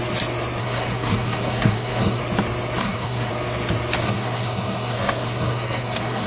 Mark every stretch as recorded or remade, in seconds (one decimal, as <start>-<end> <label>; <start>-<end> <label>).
0.0-0.6 recorded; 0.6-2.2 remade; 2.2-2.8 recorded; 2.8-3.3 remade; 3.3-4.0 recorded; 4.0-6.3 remade